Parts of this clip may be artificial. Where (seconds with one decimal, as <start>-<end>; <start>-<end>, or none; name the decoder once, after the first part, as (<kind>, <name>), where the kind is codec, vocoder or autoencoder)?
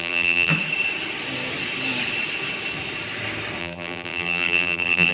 0.0-0.5 (vocoder, BigVGAN v2); 3.6-5.1